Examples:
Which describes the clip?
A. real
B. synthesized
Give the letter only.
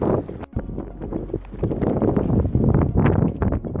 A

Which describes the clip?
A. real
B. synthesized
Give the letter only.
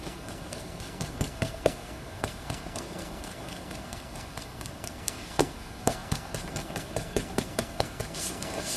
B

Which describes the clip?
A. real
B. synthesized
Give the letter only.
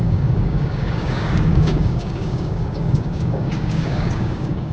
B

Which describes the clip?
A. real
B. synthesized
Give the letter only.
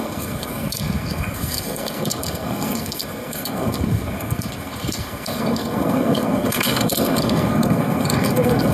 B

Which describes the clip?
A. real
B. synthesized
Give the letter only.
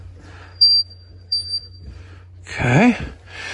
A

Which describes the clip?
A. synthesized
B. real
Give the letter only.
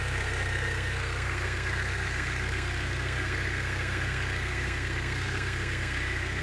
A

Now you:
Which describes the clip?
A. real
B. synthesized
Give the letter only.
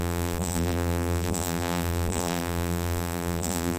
B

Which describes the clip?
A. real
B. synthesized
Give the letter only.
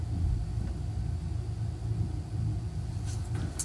A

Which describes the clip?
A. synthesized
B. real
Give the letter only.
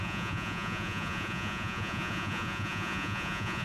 A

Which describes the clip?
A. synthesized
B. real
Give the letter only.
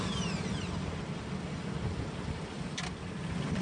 B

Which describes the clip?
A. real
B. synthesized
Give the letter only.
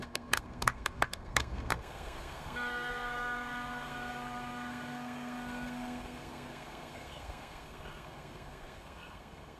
B